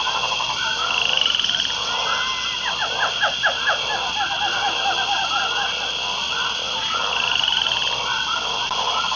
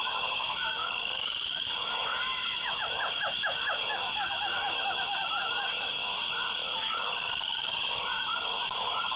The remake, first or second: second